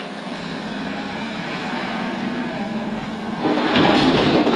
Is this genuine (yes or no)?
no